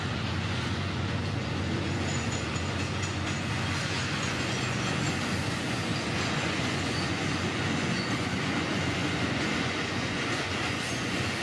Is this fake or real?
fake